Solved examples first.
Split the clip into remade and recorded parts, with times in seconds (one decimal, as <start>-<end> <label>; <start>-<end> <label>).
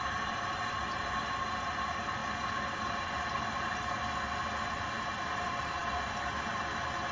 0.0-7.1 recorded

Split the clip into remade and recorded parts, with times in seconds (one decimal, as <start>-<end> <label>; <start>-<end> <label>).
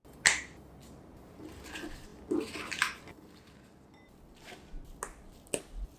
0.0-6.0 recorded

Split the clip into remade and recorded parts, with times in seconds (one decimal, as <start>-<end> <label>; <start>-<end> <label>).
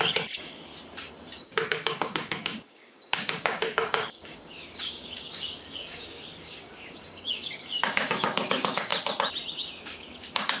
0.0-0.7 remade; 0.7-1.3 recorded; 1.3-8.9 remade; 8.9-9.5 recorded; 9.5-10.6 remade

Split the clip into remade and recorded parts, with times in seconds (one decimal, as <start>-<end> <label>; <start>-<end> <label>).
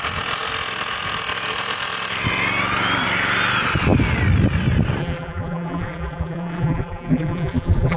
0.0-5.0 recorded; 5.0-8.0 remade